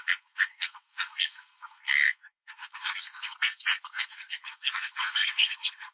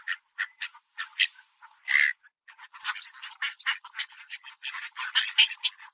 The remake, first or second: first